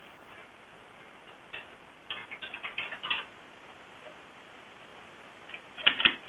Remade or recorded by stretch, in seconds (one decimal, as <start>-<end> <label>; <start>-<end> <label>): 0.0-4.9 remade; 4.9-5.5 recorded; 5.5-6.3 remade